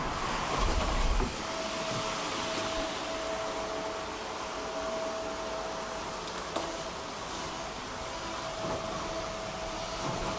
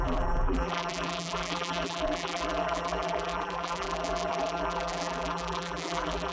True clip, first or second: first